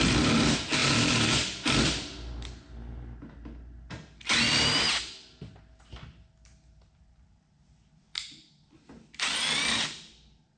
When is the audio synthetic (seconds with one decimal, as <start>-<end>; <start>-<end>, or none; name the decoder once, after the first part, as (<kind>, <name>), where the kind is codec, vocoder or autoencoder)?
none